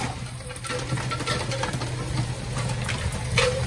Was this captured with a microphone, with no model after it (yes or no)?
yes